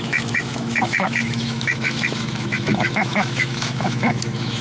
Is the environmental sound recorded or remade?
remade